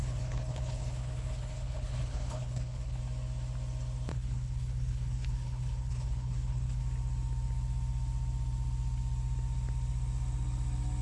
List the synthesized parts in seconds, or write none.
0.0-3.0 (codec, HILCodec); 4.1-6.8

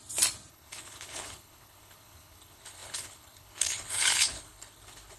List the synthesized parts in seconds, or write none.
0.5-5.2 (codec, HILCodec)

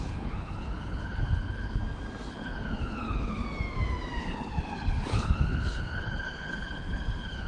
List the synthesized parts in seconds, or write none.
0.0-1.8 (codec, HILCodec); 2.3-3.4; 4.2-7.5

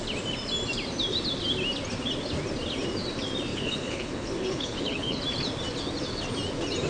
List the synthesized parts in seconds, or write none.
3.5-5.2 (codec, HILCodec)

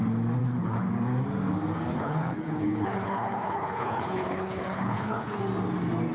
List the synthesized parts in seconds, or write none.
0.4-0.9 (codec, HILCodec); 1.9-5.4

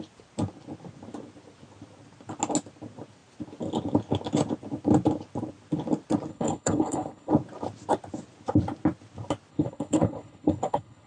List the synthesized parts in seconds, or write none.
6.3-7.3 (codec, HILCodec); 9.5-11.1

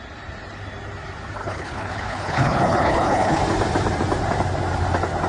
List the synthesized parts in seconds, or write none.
1.4-3.4 (codec, HILCodec)